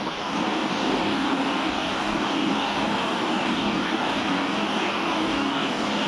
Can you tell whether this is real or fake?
fake